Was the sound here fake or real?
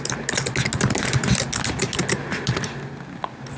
real